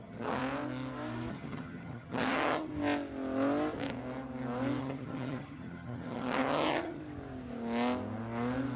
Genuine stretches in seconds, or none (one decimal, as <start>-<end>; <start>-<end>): 0.4-1.3; 2.7-4.8; 7.0-8.8